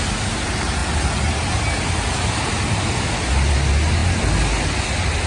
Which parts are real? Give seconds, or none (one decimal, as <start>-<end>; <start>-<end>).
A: 0.0-5.3